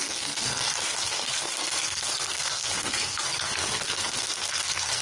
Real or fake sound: fake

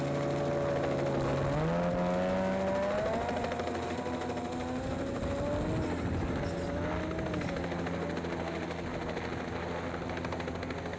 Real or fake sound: real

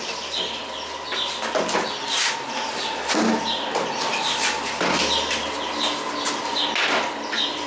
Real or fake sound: real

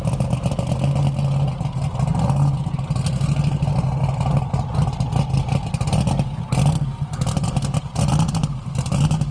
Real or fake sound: real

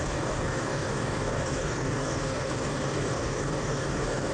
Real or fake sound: fake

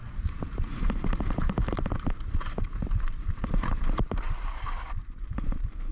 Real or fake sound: fake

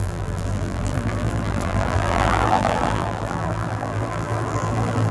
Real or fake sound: fake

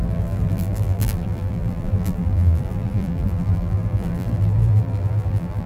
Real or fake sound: fake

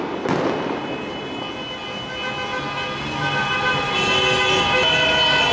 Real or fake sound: real